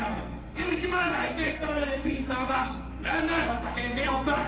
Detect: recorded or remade remade